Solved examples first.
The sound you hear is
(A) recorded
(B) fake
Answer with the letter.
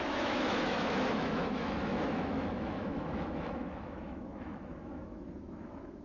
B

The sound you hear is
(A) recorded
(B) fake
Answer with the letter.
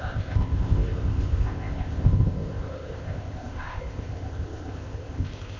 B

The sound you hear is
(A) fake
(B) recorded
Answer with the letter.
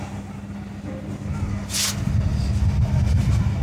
B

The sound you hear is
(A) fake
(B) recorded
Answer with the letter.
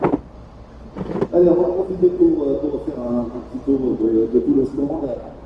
B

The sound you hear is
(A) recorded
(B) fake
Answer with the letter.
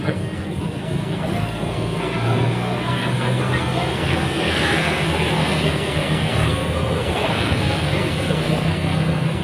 B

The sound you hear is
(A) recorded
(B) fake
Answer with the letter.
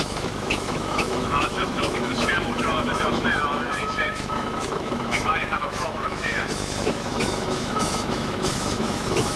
B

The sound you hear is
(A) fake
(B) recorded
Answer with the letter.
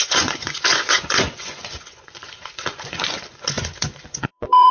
A